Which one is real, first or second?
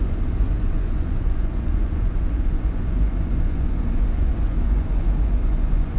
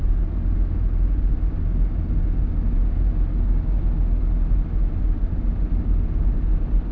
second